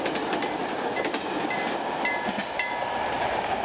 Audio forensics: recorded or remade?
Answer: remade